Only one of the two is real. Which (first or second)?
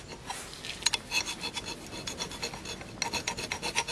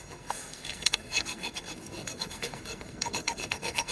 first